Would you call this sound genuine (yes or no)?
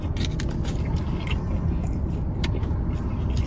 yes